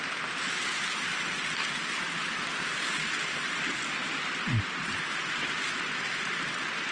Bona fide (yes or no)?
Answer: yes